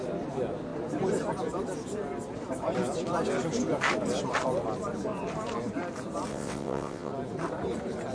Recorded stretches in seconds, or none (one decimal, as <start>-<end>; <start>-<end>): 0.0-6.3; 7.1-8.1